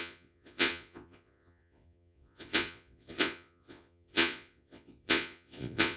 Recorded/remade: remade